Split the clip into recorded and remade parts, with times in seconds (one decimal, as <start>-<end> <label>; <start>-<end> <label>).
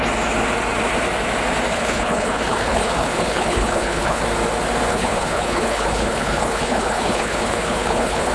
0.0-1.7 recorded; 1.7-4.2 remade; 4.2-4.9 recorded; 4.9-8.3 remade